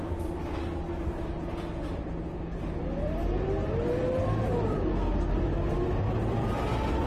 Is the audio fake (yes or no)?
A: no